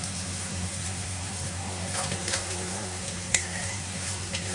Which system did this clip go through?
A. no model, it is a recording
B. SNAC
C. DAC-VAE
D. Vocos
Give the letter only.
B